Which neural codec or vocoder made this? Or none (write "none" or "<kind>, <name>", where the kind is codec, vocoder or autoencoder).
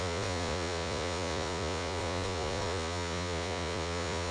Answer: vocoder, Vocos